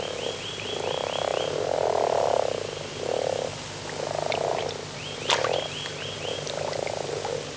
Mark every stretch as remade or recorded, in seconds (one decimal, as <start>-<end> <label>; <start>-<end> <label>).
0.0-7.6 recorded